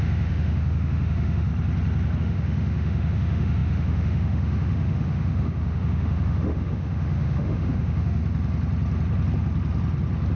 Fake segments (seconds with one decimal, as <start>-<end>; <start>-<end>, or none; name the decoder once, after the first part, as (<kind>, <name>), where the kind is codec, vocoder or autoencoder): 0.0-1.5 (autoencoder, DAC-VAE); 2.2-8.2